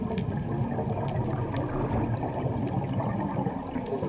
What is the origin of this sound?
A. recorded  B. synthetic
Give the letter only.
A